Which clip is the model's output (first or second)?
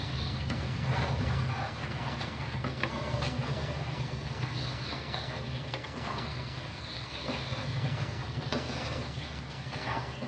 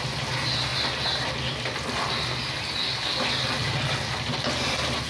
first